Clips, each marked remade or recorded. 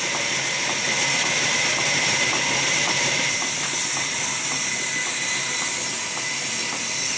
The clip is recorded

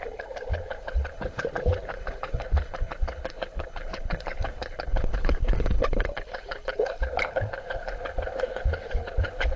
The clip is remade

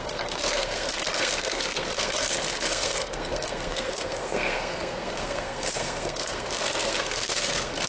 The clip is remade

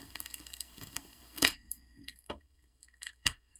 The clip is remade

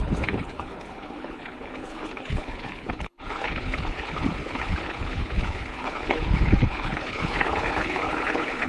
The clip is remade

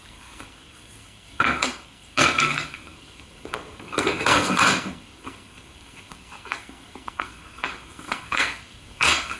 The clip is remade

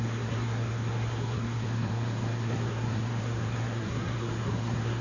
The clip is remade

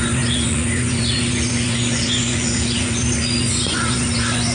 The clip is remade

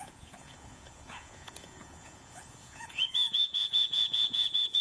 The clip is remade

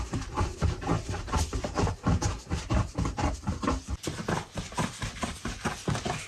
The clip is remade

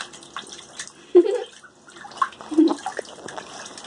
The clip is recorded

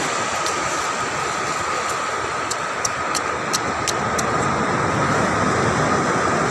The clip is recorded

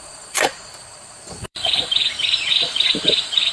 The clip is remade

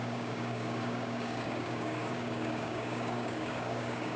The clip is remade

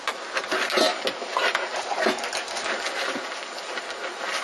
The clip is recorded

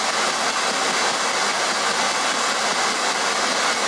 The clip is recorded